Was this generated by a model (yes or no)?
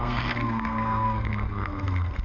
yes